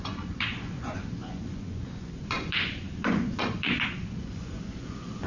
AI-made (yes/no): yes